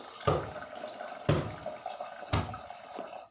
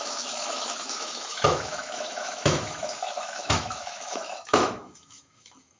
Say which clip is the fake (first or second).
second